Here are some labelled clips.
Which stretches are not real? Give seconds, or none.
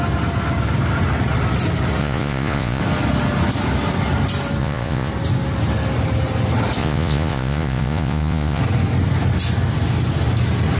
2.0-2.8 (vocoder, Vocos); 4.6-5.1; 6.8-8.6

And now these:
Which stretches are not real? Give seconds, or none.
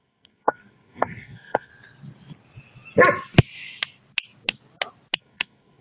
0.0-1.7 (codec, SNAC); 5.2-5.8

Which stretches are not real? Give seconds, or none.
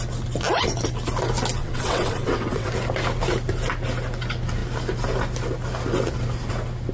1.6-2.7 (vocoder, WaveNeXt)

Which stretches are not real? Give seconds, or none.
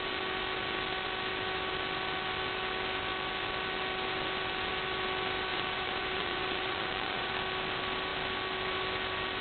5.5-7.3 (vocoder, Vocos)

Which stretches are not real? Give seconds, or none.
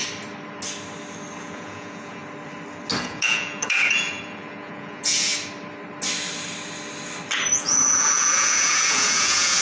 1.4-2.2 (vocoder, Vocos); 3.0-5.3; 7.5-9.6